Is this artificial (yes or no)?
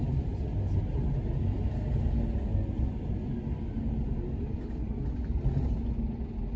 no